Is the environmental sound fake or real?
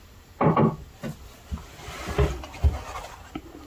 real